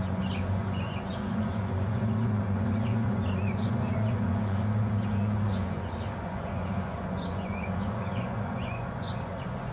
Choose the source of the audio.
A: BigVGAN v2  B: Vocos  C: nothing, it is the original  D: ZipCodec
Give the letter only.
B